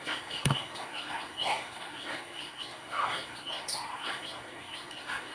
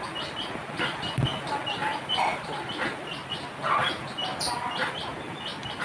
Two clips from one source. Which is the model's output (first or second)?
first